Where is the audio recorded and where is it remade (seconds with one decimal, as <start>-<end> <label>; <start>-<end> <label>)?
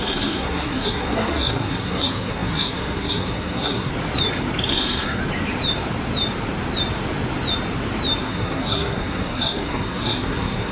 0.0-3.9 remade; 3.9-4.7 recorded; 4.7-5.2 remade; 5.2-8.2 recorded; 8.2-10.7 remade